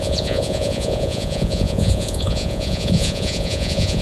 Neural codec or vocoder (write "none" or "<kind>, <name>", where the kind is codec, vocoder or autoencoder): vocoder, Vocos